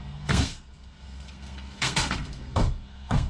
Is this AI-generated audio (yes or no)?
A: yes